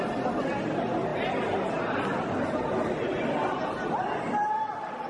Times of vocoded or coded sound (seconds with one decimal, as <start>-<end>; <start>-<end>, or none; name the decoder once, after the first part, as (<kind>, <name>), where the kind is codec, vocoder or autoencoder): none